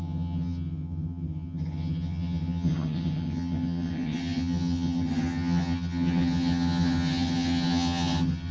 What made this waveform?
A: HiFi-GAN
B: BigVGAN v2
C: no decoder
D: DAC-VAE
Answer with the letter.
A